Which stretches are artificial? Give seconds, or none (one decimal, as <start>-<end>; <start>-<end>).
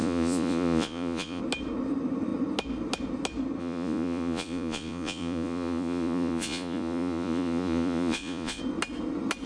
0.0-1.4; 3.6-8.6